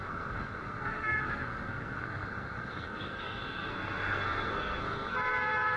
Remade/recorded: remade